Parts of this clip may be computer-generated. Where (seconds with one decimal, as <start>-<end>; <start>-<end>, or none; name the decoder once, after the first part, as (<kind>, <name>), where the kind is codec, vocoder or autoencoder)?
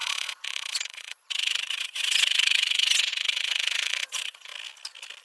0.0-4.5 (vocoder, Vocos)